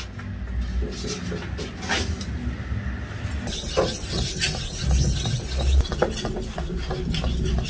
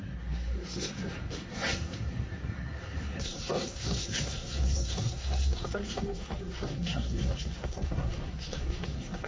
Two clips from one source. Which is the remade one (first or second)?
second